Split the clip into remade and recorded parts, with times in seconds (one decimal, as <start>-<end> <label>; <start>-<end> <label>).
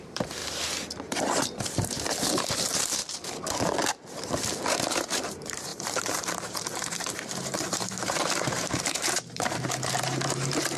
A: 0.0-0.4 remade; 0.4-1.6 recorded; 1.6-3.0 remade; 3.0-4.9 recorded; 4.9-10.8 remade